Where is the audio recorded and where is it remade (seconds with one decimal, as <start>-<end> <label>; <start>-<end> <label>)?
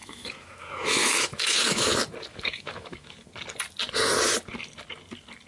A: 0.0-1.9 remade; 1.9-2.3 recorded; 2.3-3.3 remade; 3.3-5.5 recorded